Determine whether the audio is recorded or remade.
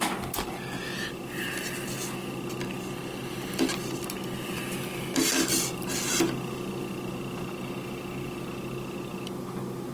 recorded